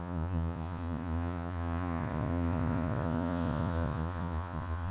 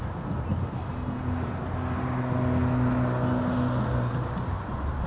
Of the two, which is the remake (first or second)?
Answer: first